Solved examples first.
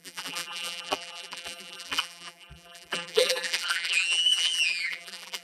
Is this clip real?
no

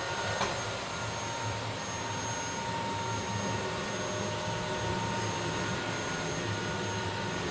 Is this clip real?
yes